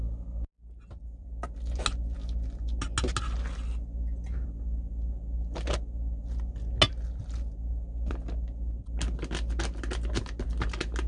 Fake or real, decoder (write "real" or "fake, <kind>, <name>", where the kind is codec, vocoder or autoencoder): real